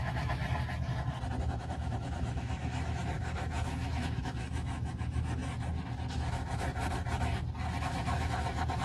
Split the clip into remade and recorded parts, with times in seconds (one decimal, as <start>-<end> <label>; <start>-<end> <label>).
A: 0.0-0.4 remade; 0.4-1.4 recorded; 1.4-5.4 remade; 5.4-6.1 recorded; 6.1-6.7 remade; 6.7-7.8 recorded; 7.8-8.8 remade